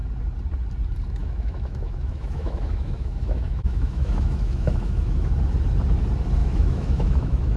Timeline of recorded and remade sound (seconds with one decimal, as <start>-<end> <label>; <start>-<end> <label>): 0.0-1.2 recorded; 1.2-5.3 remade; 5.3-6.4 recorded; 6.4-7.6 remade